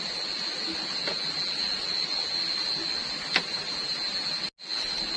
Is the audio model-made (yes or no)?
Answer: no